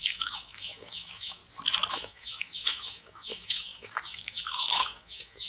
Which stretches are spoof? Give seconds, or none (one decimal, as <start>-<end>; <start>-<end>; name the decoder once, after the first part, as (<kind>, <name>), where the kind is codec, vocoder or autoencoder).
0.0-1.4 (autoencoder, DAC-VAE); 1.9-5.5